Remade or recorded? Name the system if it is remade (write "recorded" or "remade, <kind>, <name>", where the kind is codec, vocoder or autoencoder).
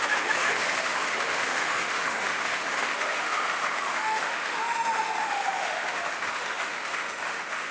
remade, autoencoder, DAC-VAE